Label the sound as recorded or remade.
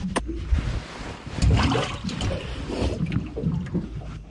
remade